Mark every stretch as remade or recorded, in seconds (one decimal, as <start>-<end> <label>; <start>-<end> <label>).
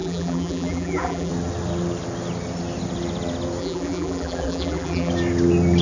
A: 0.0-1.3 remade; 1.3-3.6 recorded; 3.6-5.1 remade; 5.1-5.8 recorded